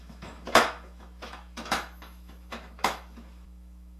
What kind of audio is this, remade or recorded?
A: remade